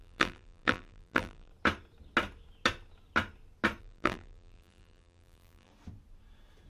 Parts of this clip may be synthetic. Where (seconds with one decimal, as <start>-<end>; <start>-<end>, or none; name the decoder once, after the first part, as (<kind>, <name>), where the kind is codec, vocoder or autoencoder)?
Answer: 0.0-1.5 (vocoder, BigVGAN v2); 3.8-5.7